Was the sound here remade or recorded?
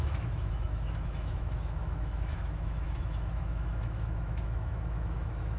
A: remade